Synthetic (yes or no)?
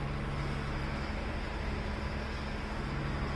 no